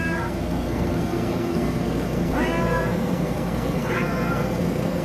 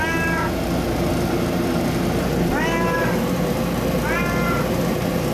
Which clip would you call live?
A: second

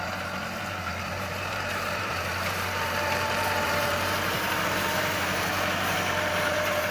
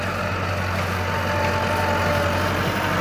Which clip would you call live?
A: second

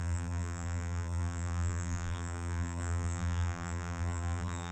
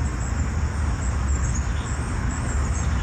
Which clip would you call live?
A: second